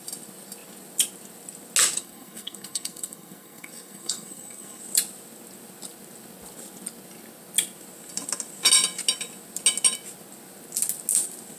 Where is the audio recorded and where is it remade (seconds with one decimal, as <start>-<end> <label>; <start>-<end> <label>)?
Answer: 0.0-2.0 recorded; 2.0-4.8 remade; 4.8-11.6 recorded